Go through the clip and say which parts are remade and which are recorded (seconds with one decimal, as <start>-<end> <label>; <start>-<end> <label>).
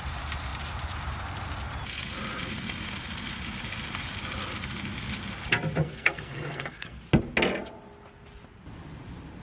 0.0-5.8 recorded; 5.8-7.0 remade; 7.0-9.4 recorded